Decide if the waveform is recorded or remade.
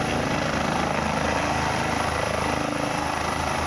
recorded